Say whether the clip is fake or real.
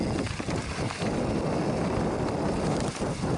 real